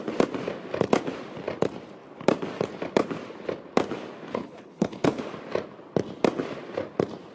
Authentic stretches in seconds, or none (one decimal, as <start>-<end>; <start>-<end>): 0.0-4.3; 5.2-7.3